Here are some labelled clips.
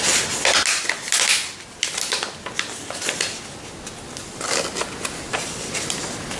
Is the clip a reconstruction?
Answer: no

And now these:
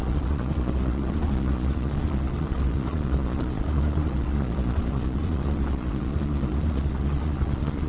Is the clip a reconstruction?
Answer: yes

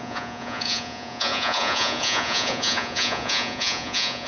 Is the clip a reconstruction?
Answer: yes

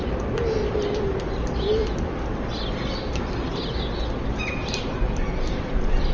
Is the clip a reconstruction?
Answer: no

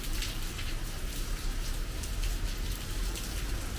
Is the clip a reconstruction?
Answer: no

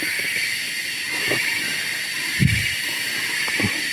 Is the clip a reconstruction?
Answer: no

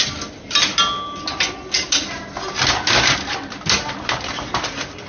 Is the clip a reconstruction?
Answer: no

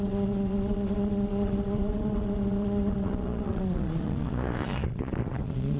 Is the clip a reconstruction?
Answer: yes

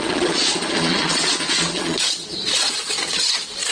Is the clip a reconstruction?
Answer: yes